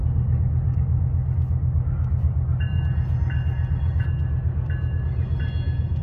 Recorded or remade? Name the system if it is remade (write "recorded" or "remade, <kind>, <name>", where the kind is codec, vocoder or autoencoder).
recorded